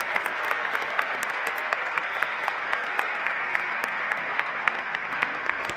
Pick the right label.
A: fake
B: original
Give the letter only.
A